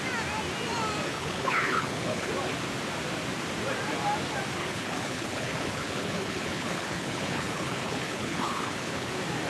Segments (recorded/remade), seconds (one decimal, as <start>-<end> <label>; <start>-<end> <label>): 0.0-1.1 recorded; 1.1-2.3 remade; 2.3-4.6 recorded; 4.6-9.1 remade; 9.1-9.5 recorded

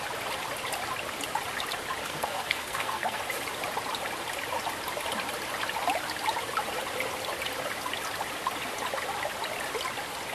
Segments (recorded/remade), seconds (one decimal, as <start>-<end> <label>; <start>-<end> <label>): 0.0-2.0 recorded; 2.0-3.2 remade; 3.2-10.3 recorded

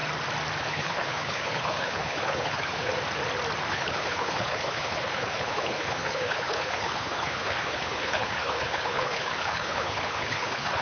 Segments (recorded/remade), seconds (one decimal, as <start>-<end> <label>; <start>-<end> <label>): 0.0-0.6 recorded; 0.6-2.9 remade; 2.9-3.7 recorded; 3.7-10.8 remade

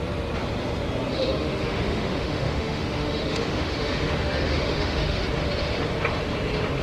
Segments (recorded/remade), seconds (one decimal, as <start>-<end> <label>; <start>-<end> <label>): 0.0-1.1 recorded; 1.1-5.2 remade; 5.2-6.8 recorded

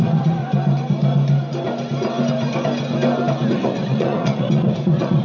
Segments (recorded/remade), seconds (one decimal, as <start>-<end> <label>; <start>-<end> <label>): 0.0-0.4 remade; 0.4-3.5 recorded; 3.5-5.2 remade

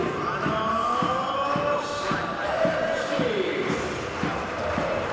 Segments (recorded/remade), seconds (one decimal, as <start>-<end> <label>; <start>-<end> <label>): 0.0-0.8 recorded; 0.8-3.3 remade; 3.3-4.3 recorded; 4.3-5.1 remade

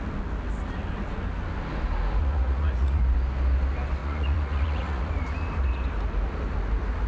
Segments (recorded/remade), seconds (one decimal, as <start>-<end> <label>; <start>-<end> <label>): 0.0-2.2 recorded; 2.2-3.0 remade; 3.0-4.0 recorded; 4.0-5.1 remade; 5.1-7.1 recorded

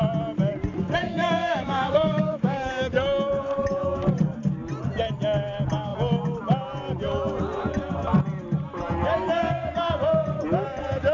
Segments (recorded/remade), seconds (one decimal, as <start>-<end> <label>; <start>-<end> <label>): 0.0-1.1 recorded; 1.1-2.7 remade; 2.7-11.1 recorded